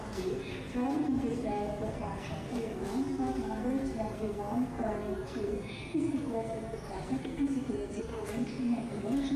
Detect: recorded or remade remade